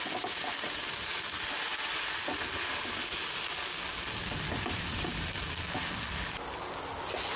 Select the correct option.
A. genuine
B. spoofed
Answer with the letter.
A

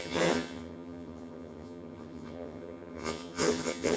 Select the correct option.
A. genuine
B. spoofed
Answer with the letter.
B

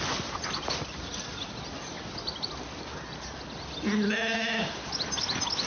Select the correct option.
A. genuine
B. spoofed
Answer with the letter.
A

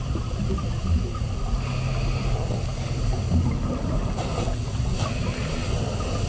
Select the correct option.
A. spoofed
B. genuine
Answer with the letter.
B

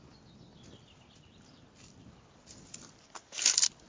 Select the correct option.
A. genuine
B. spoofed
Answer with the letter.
A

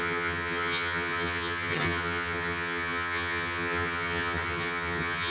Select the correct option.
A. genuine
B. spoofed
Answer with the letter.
B